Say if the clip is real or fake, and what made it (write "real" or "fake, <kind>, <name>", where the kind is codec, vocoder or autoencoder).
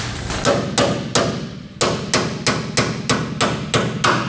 real